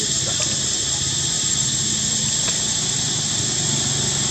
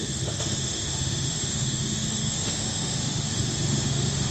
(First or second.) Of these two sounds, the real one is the first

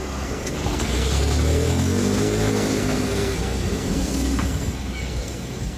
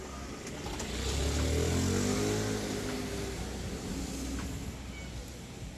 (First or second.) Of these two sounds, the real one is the second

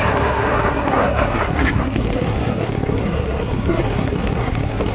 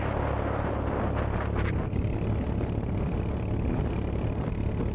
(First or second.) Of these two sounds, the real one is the second